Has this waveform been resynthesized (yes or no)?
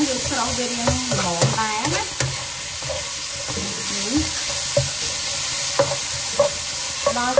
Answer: no